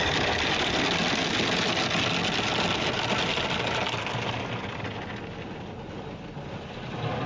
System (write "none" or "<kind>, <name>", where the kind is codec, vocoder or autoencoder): none